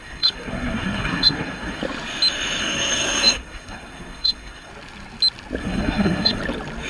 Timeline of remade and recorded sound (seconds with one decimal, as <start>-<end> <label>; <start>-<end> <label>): 0.0-1.8 remade; 1.8-2.6 recorded; 2.6-4.7 remade; 4.7-5.6 recorded; 5.6-6.4 remade; 6.4-6.9 recorded